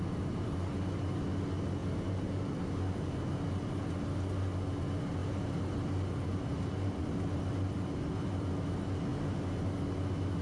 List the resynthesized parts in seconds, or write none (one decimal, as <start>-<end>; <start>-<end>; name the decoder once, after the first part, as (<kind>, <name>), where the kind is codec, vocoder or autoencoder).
1.8-2.6 (vocoder, BigVGAN v2); 5.2-8.5